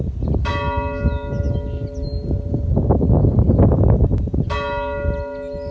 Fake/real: real